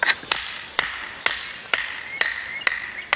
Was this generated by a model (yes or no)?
no